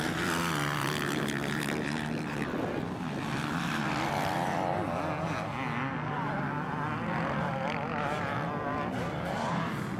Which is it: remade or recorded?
recorded